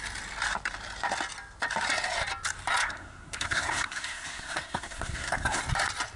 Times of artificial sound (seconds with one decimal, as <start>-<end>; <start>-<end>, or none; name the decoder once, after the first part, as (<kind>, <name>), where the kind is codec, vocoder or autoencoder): 2.8-5.6 (codec, SNAC)